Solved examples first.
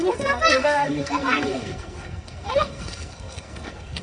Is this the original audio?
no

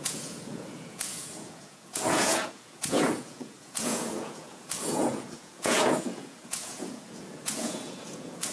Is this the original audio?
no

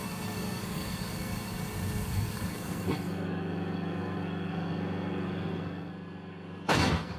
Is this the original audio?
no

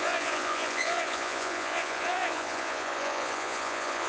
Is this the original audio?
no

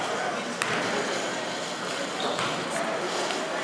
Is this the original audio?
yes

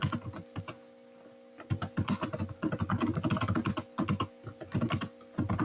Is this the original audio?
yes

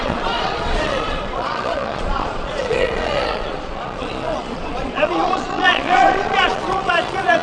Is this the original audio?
no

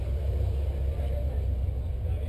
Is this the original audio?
yes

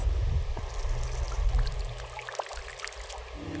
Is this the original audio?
yes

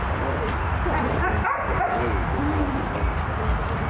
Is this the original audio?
yes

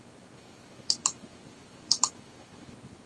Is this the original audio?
no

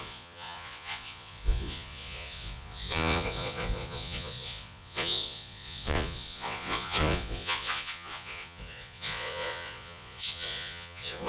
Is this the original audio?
no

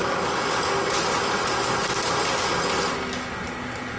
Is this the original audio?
yes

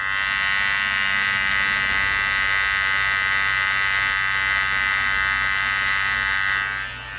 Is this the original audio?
yes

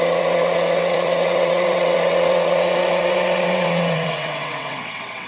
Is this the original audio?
no